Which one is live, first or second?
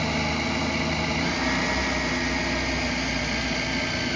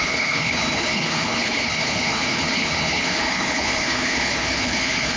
first